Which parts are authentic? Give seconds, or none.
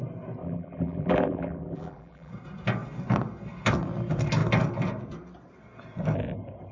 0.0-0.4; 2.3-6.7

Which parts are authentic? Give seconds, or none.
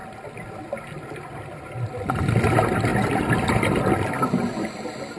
0.0-2.9; 3.8-5.2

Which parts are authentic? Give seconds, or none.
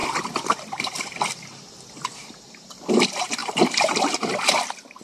2.9-3.4; 4.2-5.0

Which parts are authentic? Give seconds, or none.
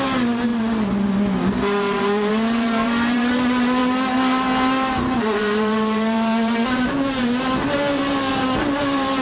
0.5-1.5